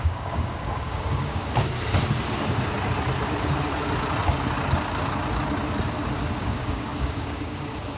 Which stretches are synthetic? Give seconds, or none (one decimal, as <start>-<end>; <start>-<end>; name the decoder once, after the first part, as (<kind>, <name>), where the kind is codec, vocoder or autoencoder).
0.0-1.6 (codec, DAC); 6.4-8.0